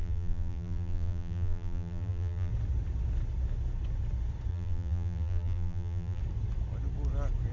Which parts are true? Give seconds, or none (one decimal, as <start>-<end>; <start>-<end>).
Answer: 2.5-4.5; 6.2-7.5